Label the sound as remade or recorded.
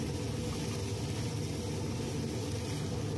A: recorded